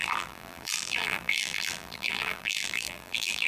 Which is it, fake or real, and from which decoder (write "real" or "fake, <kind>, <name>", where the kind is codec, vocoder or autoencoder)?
fake, vocoder, BigVGAN v2